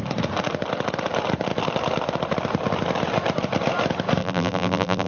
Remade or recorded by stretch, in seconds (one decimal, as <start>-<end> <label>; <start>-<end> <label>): 0.0-4.2 recorded; 4.2-5.1 remade